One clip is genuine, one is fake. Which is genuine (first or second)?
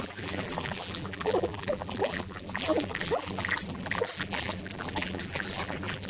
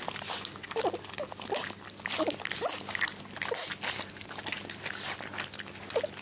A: second